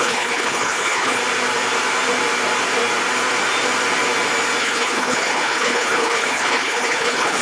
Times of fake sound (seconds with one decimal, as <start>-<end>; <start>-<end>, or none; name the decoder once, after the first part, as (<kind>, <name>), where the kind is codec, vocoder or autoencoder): 0.0-1.2 (codec, HILCodec); 4.6-7.4

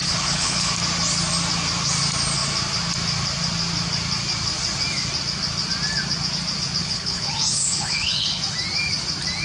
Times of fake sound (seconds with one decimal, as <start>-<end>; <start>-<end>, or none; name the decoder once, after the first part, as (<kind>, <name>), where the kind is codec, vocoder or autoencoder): 0.0-0.7 (codec, HILCodec); 6.8-8.4

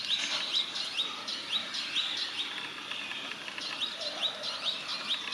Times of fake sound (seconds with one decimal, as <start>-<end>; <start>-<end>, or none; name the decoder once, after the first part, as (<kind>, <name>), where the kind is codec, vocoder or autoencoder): none

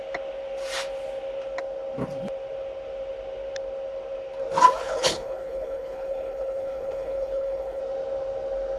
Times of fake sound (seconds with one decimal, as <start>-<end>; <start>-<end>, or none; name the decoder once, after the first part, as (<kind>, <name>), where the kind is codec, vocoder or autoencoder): 4.8-7.8 (codec, HILCodec)

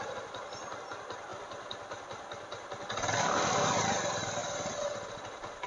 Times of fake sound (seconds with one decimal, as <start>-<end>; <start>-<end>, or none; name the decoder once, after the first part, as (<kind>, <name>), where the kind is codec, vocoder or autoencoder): none

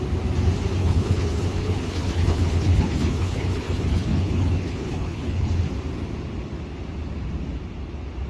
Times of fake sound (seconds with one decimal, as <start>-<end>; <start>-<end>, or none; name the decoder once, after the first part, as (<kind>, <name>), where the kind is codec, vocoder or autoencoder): 0.8-5.7 (codec, HILCodec)

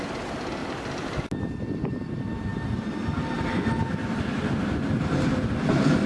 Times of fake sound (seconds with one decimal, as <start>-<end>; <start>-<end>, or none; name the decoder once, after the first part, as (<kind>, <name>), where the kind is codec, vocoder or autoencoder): none

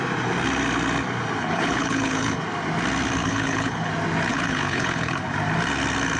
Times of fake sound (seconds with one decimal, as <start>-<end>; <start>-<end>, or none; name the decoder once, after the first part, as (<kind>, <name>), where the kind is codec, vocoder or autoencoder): 1.4-2.4 (codec, HILCodec); 3.2-3.9; 4.3-5.2